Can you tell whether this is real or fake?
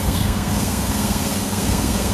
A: fake